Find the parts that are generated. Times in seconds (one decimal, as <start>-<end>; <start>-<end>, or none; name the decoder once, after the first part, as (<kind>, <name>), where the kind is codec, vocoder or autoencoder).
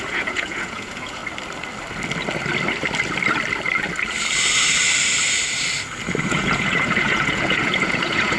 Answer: 0.0-1.2 (vocoder, Vocos); 6.2-8.4